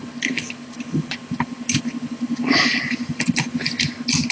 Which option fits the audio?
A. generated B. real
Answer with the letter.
B